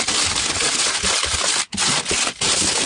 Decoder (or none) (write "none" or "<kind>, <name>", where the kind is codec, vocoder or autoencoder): none